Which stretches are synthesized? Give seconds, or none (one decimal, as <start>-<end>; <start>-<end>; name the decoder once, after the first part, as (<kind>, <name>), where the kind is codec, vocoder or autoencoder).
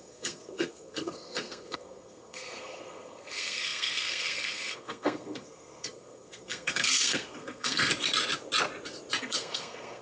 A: 0.0-7.9 (codec, SNAC); 9.2-10.0